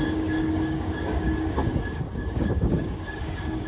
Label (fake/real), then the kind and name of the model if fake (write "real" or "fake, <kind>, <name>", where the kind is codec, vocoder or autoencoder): fake, codec, DAC